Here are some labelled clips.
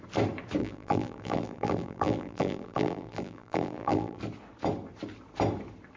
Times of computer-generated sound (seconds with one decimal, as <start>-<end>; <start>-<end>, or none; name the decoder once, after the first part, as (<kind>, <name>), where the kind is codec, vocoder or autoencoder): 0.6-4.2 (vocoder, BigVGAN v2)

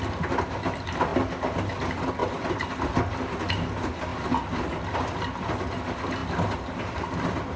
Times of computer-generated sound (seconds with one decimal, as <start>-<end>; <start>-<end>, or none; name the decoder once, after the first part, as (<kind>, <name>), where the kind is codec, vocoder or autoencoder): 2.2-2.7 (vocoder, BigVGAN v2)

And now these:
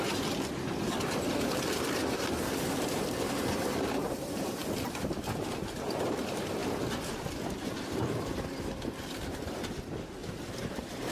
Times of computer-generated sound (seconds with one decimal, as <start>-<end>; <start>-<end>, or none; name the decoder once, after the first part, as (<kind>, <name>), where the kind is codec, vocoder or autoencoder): 0.0-6.6 (vocoder, BigVGAN v2); 7.3-10.2; 10.7-11.1